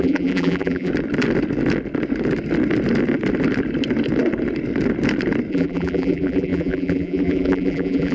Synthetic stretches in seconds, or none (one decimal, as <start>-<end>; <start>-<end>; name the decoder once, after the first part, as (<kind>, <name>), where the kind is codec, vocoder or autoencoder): 0.0-0.9 (vocoder, BigVGAN v2); 5.5-8.1